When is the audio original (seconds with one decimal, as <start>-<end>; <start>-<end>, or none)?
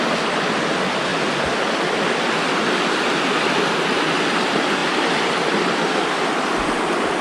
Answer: 0.0-7.2